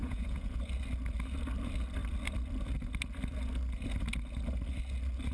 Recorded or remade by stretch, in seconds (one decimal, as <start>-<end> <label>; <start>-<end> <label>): 0.0-0.6 remade; 0.6-5.3 recorded